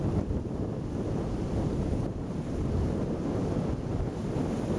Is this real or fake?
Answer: real